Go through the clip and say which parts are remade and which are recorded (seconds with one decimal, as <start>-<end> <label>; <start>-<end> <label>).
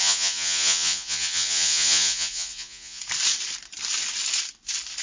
0.0-3.0 remade; 3.0-5.0 recorded